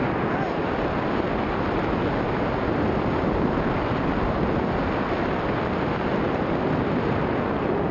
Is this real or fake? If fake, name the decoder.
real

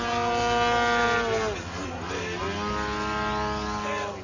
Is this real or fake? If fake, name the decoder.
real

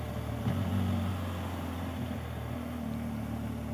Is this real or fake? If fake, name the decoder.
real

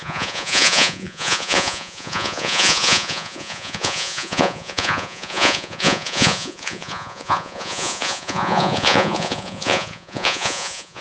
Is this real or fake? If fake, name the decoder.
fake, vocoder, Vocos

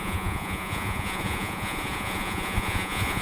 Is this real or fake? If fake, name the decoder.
fake, vocoder, Vocos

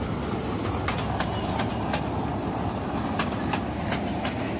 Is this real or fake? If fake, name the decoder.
real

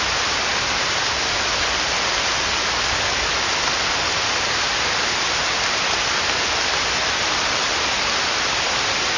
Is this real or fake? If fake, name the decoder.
real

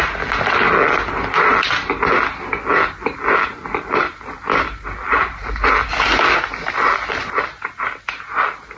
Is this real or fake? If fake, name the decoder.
real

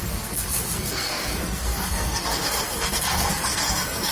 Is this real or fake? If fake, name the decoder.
fake, codec, SNAC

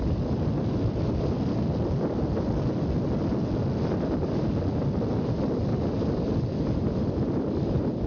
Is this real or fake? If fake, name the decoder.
real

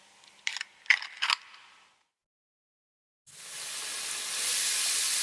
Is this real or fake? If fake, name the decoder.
real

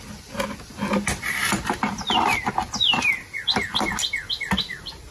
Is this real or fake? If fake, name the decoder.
real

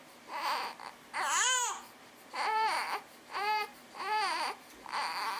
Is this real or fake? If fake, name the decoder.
fake, vocoder, BigVGAN v2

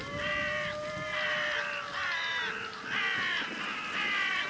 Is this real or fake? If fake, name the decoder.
real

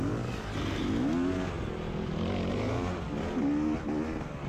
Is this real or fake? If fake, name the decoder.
real